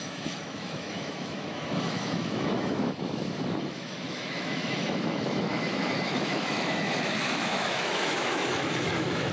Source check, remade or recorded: remade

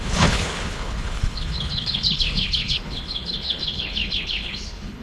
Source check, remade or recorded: remade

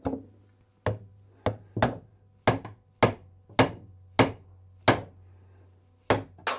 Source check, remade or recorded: recorded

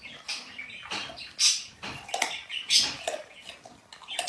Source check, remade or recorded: recorded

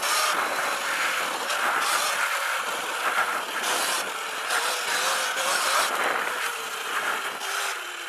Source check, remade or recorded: recorded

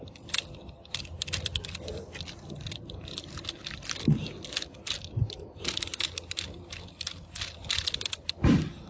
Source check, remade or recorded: recorded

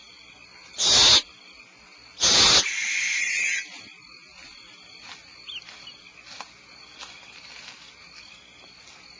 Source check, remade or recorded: recorded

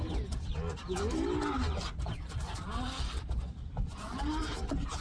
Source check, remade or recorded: recorded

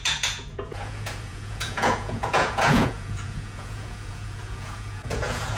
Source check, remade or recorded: remade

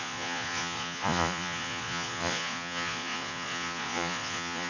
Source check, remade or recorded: remade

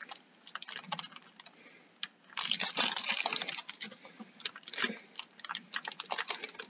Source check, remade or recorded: recorded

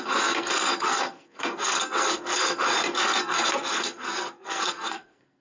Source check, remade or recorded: remade